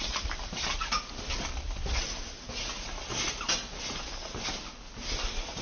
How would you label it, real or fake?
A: real